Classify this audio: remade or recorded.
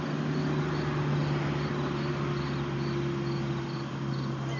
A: recorded